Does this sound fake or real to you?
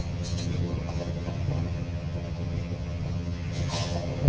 fake